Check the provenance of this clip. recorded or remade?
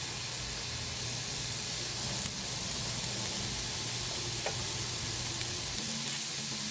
recorded